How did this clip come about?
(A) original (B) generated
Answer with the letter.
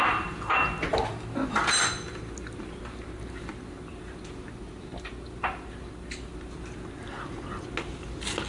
A